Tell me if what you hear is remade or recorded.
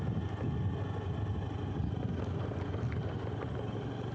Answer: recorded